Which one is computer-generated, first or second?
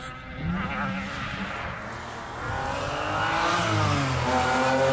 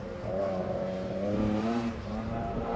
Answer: second